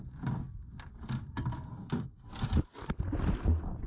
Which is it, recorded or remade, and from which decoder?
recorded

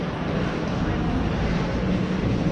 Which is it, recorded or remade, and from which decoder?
recorded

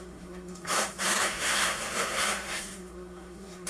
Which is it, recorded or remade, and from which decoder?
remade, codec, SNAC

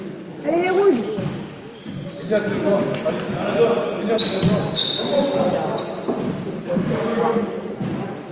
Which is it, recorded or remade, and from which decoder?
recorded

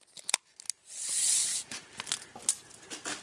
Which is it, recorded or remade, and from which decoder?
recorded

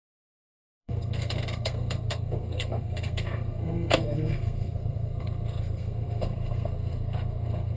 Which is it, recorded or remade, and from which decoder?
remade, codec, SNAC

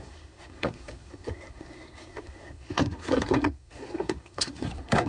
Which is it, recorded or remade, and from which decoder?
remade, codec, SNAC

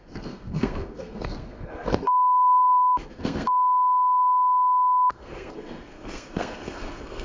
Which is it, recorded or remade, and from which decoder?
remade, codec, SNAC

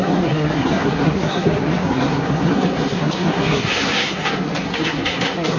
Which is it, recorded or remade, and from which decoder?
remade, codec, SNAC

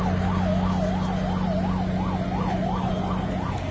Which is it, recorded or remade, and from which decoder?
recorded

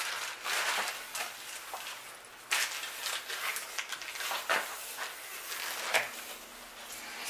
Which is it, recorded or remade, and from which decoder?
recorded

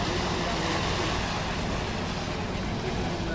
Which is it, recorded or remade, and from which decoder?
recorded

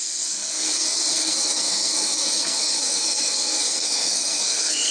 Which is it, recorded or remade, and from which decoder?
remade, codec, SNAC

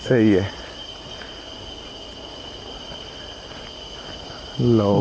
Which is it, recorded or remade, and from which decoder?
recorded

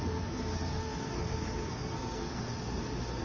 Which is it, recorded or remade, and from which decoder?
remade, codec, SNAC